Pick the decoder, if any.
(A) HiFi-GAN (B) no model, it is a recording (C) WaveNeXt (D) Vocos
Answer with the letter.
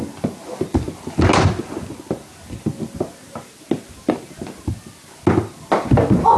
B